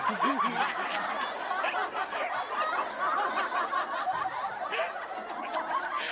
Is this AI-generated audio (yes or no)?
no